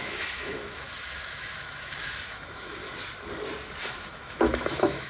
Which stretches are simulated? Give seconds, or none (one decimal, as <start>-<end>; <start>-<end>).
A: 0.0-2.8; 3.8-5.1